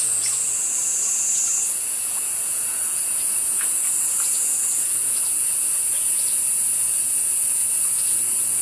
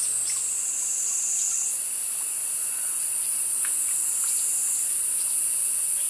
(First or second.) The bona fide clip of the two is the second